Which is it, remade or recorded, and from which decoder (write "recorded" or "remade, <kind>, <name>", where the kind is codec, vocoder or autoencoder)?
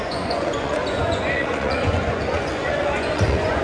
remade, vocoder, Vocos